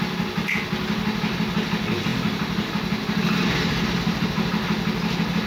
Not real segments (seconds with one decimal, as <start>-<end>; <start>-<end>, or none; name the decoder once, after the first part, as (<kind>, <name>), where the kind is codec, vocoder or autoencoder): none